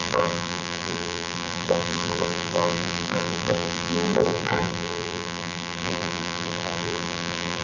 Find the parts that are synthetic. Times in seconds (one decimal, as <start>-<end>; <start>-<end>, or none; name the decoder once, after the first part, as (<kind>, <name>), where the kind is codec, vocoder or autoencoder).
0.0-7.6 (vocoder, BigVGAN v2)